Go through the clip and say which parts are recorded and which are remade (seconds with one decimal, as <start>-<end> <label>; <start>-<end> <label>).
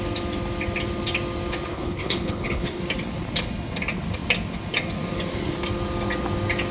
0.0-1.7 recorded; 1.7-2.8 remade; 2.8-6.7 recorded